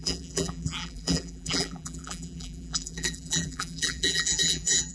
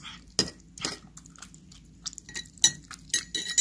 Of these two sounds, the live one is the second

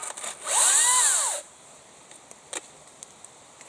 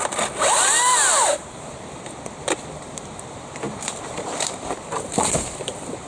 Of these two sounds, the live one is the first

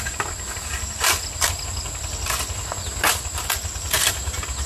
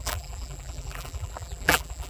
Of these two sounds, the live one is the first